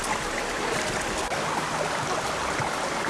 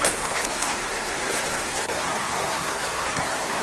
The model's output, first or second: second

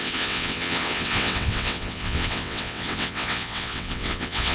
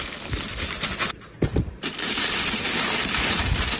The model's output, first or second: first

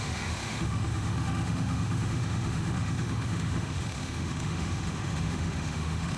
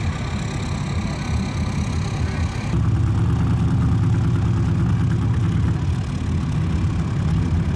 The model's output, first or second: first